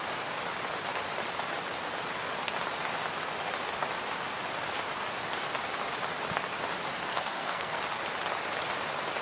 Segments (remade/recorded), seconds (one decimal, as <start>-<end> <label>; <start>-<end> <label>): 0.0-7.1 recorded; 7.1-7.8 remade; 7.8-9.2 recorded